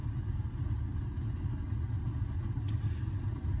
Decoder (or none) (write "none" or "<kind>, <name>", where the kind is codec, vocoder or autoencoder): none